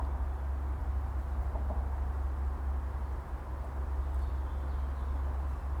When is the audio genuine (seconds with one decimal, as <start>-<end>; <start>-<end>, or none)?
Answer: 0.0-5.8